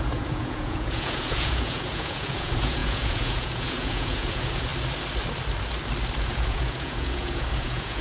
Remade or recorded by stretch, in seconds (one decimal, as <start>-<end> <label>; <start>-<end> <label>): 0.0-4.7 remade; 4.7-6.2 recorded; 6.2-8.0 remade